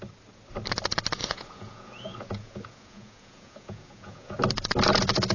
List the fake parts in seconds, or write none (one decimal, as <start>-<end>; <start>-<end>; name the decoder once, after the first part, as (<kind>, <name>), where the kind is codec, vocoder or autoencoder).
1.2-4.4 (vocoder, Vocos)